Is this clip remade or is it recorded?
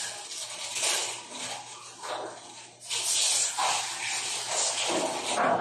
recorded